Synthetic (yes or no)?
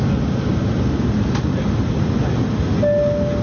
no